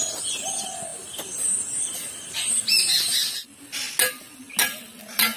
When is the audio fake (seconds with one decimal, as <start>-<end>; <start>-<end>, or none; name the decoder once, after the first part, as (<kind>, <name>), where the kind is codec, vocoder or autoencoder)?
none